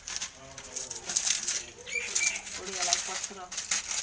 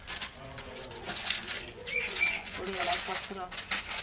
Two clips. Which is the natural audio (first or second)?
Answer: first